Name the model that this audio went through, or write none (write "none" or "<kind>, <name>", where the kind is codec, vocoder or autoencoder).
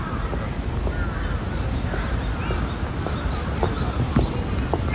none